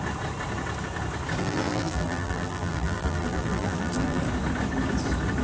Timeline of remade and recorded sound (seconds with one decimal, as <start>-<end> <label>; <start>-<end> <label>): 0.0-1.4 recorded; 1.4-4.2 remade; 4.2-5.4 recorded